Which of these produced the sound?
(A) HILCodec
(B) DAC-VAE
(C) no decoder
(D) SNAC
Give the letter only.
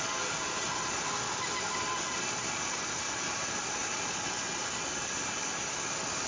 C